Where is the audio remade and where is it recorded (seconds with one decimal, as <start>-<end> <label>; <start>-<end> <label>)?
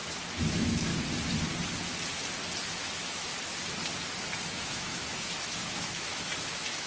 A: 0.0-0.5 recorded; 0.5-0.9 remade; 0.9-2.7 recorded; 2.7-3.3 remade; 3.3-4.5 recorded; 4.5-6.9 remade